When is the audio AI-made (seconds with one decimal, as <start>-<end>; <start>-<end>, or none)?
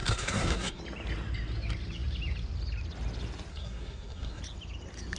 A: 0.0-0.8; 3.5-4.4